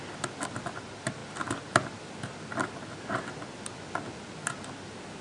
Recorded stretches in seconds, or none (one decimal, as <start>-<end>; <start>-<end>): 0.0-5.2